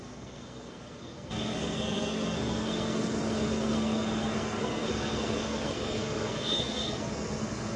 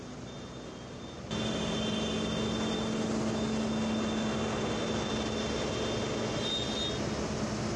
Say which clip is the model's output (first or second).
first